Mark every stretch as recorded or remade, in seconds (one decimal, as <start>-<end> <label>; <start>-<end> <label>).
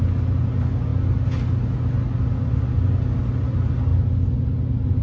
0.0-5.0 recorded